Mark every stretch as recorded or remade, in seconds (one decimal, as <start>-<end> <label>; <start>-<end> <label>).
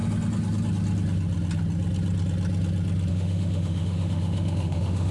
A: 0.0-3.1 recorded; 3.1-5.1 remade